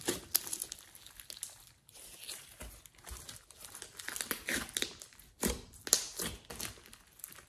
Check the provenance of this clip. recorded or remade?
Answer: recorded